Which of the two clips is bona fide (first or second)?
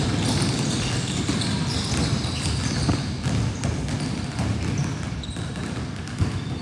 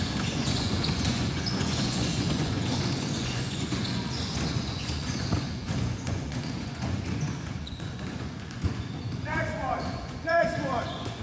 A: first